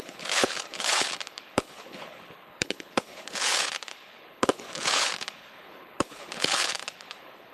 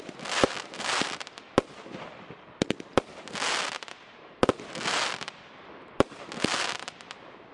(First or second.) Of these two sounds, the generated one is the first